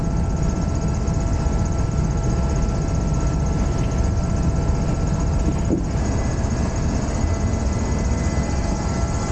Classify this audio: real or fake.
real